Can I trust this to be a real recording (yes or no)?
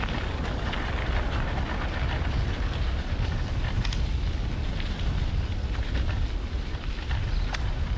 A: yes